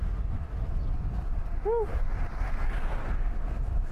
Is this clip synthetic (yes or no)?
no